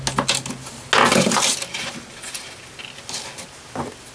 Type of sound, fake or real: real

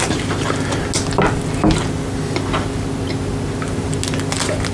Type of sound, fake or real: real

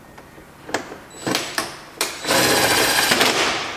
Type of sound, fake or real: real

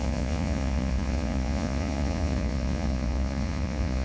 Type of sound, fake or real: fake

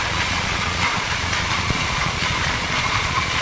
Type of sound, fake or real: fake